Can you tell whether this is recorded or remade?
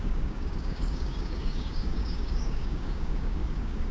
remade